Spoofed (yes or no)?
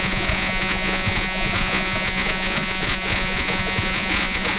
yes